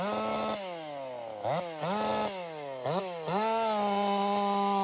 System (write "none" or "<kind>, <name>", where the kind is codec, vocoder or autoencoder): none